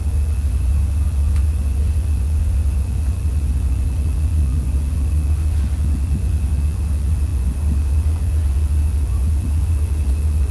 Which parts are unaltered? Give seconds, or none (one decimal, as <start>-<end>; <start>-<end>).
none